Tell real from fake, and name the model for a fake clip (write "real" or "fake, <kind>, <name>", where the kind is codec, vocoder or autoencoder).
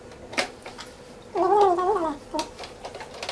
real